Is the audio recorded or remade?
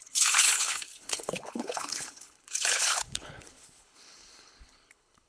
remade